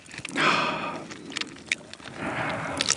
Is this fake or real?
real